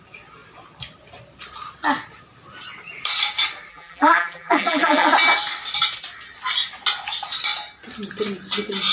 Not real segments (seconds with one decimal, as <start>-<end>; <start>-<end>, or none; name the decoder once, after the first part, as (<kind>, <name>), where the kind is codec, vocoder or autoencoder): 3.7-5.1 (vocoder, BigVGAN v2)

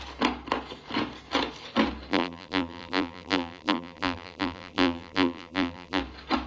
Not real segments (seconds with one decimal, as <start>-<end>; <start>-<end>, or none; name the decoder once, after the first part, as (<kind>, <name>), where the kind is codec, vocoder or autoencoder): 2.1-6.0 (vocoder, BigVGAN v2)

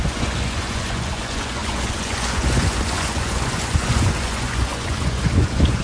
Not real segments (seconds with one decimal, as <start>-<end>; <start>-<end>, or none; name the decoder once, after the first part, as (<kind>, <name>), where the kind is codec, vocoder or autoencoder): 0.0-5.8 (vocoder, Vocos)

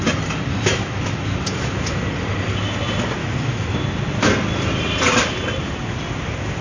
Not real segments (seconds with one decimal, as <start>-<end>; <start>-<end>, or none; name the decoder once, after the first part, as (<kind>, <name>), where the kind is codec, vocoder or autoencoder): 0.5-2.0 (autoencoder, DAC-VAE); 3.2-3.8

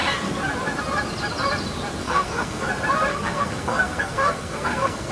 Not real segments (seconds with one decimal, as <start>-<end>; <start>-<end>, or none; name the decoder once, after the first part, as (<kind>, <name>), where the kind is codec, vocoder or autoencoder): 2.0-2.7 (codec, SNAC); 3.1-5.1

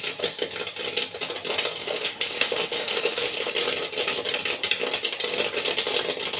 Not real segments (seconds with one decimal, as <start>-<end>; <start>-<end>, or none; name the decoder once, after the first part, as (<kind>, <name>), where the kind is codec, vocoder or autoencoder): 1.8-3.5 (autoencoder, DAC-VAE)